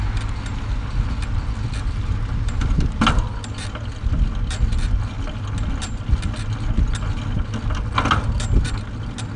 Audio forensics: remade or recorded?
recorded